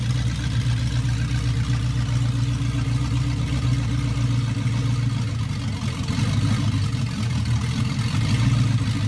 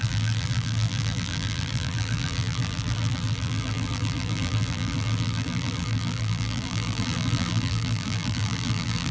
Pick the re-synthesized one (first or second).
second